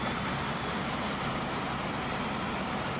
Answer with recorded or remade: recorded